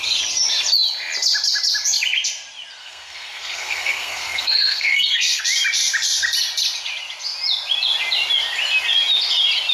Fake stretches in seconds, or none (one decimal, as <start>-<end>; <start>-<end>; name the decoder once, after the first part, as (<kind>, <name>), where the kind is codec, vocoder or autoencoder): 2.8-5.4 (codec, SNAC)